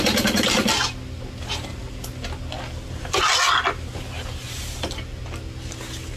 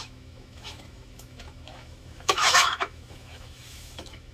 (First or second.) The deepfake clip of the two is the second